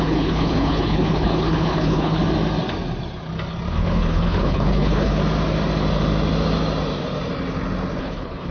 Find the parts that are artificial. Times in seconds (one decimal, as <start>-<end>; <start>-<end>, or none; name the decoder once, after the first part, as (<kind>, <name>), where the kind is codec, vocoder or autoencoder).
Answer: 0.0-2.2 (codec, HILCodec); 3.7-5.2; 8.0-8.5